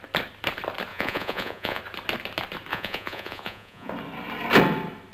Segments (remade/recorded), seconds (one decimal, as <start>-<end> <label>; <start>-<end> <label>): 0.0-0.9 recorded; 0.9-1.8 remade; 1.8-2.7 recorded; 2.7-3.9 remade; 3.9-5.1 recorded